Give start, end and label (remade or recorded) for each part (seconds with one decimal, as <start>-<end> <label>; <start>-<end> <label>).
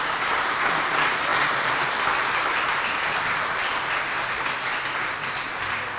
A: 0.0-6.0 recorded